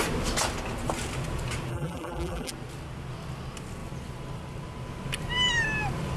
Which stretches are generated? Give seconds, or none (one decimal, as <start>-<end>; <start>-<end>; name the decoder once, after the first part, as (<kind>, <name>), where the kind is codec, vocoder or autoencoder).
1.7-2.5 (vocoder, BigVGAN v2)